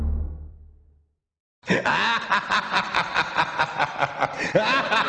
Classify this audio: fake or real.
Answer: real